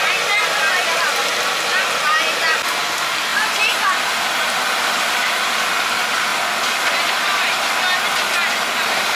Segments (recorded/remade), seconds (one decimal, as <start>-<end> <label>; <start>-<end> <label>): 0.0-9.1 recorded